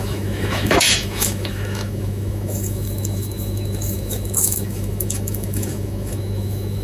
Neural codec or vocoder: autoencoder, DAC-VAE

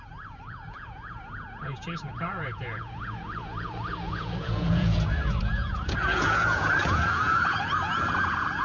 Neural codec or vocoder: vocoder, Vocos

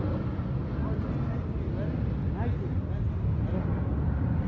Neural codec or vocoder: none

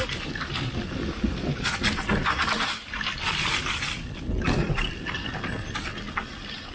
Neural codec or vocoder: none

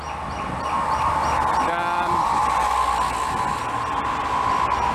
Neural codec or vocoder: none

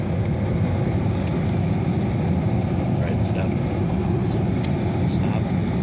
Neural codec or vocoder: none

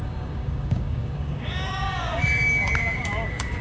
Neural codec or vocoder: codec, DAC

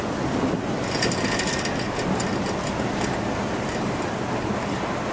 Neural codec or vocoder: none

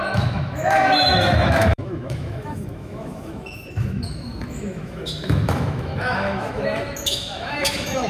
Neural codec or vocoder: autoencoder, DAC-VAE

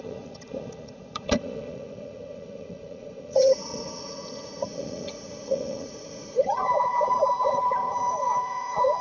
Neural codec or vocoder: vocoder, Vocos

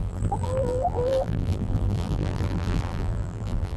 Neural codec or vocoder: vocoder, BigVGAN v2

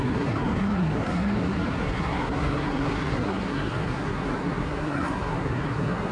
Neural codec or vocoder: codec, SNAC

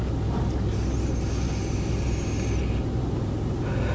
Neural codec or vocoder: none